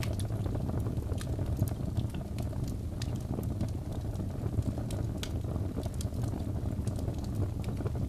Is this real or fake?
real